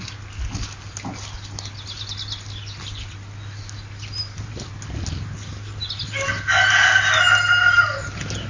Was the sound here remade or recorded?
recorded